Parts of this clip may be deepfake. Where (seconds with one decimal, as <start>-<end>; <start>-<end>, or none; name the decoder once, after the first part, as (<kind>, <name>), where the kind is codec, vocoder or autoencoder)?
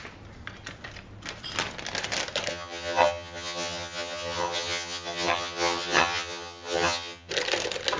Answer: 2.5-7.3 (vocoder, HiFi-GAN)